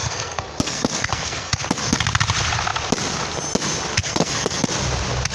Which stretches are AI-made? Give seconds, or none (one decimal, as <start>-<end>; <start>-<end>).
0.0-2.0; 4.0-4.7

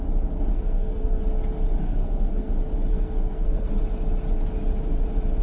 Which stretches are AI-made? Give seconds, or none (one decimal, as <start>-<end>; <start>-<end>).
0.5-1.2; 1.8-2.5; 2.9-3.7